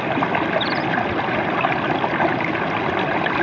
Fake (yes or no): no